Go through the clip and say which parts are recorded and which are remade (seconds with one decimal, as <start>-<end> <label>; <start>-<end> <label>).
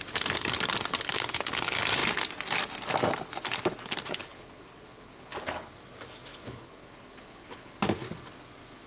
0.0-4.2 recorded; 4.2-5.3 remade; 5.3-6.3 recorded; 6.3-7.8 remade; 7.8-8.9 recorded